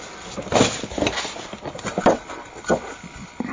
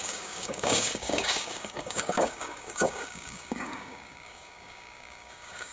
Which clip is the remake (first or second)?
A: second